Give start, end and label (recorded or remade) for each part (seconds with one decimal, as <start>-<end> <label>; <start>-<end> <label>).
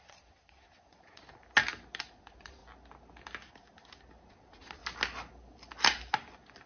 0.0-1.2 remade; 1.2-2.1 recorded; 2.1-2.6 remade; 2.6-4.3 recorded; 4.3-4.8 remade; 4.8-6.7 recorded